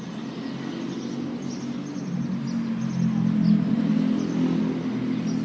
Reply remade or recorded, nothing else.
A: recorded